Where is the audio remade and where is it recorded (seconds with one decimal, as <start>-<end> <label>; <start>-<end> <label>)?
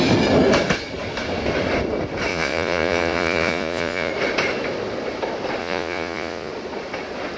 0.0-2.3 recorded; 2.3-4.1 remade; 4.1-5.6 recorded; 5.6-6.5 remade; 6.5-7.4 recorded